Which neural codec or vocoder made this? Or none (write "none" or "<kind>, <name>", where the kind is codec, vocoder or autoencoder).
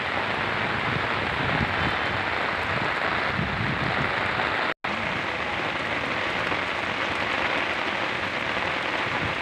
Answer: none